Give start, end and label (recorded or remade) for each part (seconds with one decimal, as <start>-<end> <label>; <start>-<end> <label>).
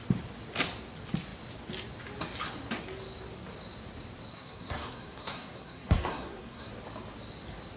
0.0-4.3 recorded; 4.3-6.7 remade; 6.7-7.8 recorded